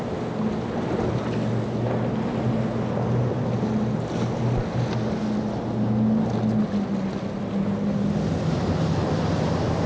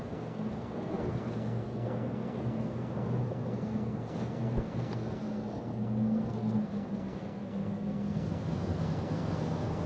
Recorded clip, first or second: first